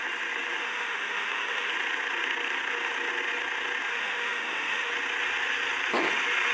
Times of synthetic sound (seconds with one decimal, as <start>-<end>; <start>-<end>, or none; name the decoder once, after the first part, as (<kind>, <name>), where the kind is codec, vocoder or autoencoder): 0.6-1.7 (autoencoder, DAC-VAE); 3.9-4.9